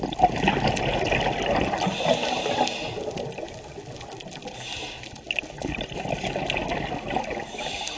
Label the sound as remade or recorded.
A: recorded